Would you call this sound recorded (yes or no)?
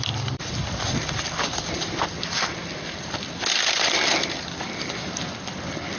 yes